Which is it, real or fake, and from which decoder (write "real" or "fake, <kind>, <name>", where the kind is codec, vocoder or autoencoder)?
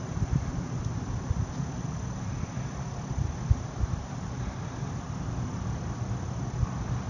real